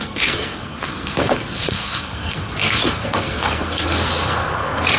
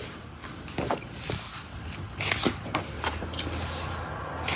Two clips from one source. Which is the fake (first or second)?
first